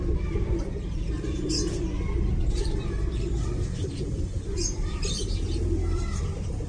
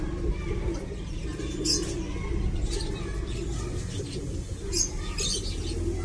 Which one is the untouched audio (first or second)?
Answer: second